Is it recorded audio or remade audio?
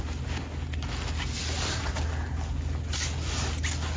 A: recorded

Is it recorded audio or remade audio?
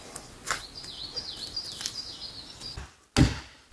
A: recorded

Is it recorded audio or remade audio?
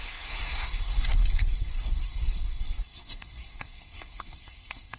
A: remade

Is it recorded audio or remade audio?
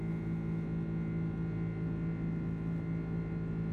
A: recorded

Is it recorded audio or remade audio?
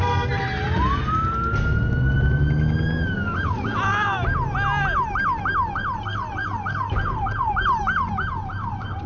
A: recorded